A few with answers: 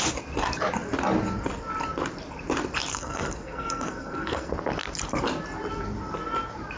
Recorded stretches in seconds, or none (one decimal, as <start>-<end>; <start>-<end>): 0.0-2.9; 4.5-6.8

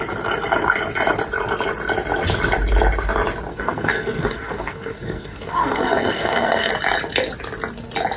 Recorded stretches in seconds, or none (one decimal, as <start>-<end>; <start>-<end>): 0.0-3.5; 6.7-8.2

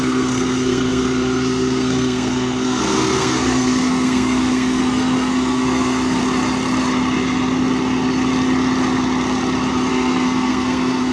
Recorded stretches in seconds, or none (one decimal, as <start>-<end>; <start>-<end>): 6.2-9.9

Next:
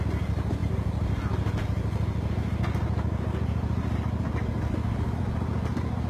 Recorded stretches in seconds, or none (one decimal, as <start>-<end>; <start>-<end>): 0.0-6.1